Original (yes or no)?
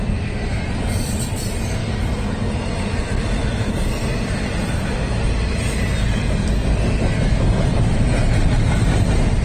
yes